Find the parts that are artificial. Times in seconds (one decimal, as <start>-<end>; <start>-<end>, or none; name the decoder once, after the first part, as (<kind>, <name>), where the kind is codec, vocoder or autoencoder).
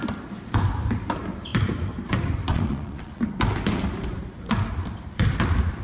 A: 2.5-3.2 (vocoder, Vocos)